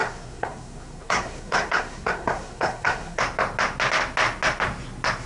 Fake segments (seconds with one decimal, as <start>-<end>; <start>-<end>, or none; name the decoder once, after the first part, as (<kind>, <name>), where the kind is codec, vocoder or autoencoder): 0.0-3.2 (codec, SNAC)